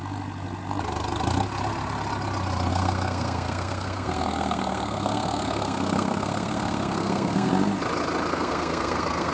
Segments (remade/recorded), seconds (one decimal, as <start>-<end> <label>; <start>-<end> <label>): 0.0-2.7 recorded; 2.7-7.5 remade; 7.5-8.3 recorded; 8.3-9.3 remade

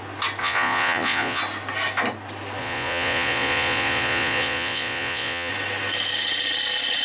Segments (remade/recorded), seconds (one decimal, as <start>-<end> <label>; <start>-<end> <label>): 0.0-0.4 recorded; 0.4-1.4 remade; 1.4-2.6 recorded; 2.6-5.5 remade; 5.5-7.0 recorded

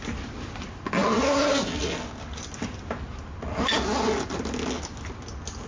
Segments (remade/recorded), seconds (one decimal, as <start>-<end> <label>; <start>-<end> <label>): 0.0-5.7 recorded

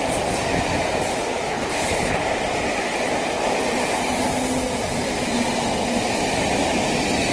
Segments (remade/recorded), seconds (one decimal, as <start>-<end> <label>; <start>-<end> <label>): 0.0-1.5 recorded; 1.5-2.2 remade; 2.2-7.3 recorded

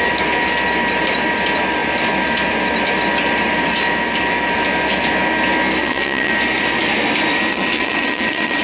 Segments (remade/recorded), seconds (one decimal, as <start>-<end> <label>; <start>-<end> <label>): 0.0-5.8 recorded; 5.8-6.3 remade; 6.3-7.5 recorded; 7.5-8.6 remade

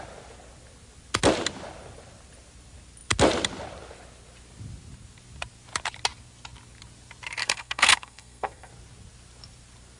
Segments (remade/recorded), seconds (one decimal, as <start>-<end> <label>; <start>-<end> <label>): 0.0-7.4 recorded; 7.4-8.7 remade; 8.7-10.0 recorded